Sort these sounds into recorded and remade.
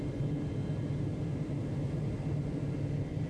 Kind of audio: recorded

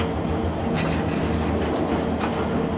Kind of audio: recorded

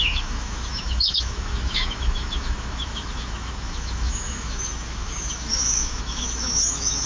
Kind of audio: remade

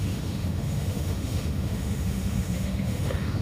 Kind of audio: remade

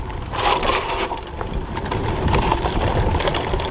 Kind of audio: recorded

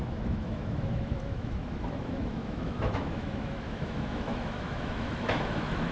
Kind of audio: remade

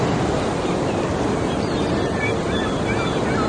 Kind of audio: recorded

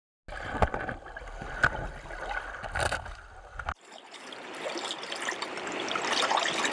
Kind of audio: recorded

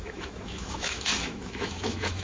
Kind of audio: remade